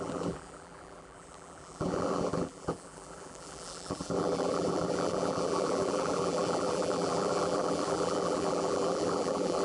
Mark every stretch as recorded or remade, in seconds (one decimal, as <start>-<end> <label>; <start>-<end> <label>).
0.0-9.6 remade